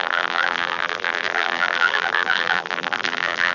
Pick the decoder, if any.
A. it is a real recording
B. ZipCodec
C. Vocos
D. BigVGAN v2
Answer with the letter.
D